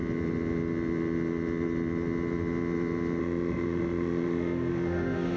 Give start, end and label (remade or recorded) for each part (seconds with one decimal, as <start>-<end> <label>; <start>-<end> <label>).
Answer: 0.0-3.2 recorded; 3.2-5.4 remade